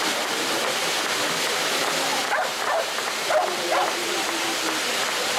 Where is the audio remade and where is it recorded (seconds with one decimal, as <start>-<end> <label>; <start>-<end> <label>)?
0.0-5.4 recorded